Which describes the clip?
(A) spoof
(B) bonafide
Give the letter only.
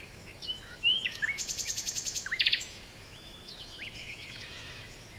A